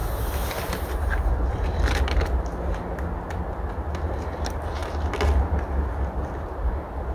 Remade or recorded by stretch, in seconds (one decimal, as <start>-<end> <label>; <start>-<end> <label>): 0.0-7.1 recorded

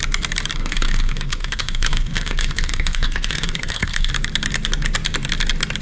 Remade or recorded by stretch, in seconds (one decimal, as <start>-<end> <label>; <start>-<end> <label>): 0.0-0.6 recorded; 0.6-4.1 remade; 4.1-5.8 recorded

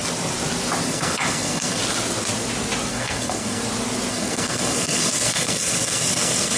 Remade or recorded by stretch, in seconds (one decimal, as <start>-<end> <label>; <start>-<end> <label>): 0.0-0.9 recorded; 0.9-1.8 remade; 1.8-2.9 recorded; 2.9-3.6 remade; 3.6-4.1 recorded; 4.1-6.6 remade

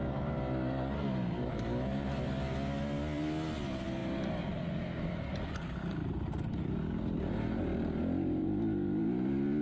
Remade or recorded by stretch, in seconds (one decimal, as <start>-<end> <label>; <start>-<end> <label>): 0.0-9.6 recorded

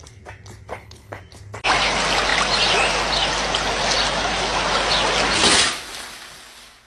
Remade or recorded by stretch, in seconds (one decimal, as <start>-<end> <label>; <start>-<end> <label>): 0.0-0.7 recorded; 0.7-1.2 remade; 1.2-6.9 recorded